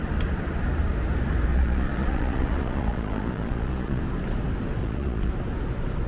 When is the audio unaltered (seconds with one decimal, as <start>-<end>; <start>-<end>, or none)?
0.0-1.5; 4.0-4.8; 5.3-6.1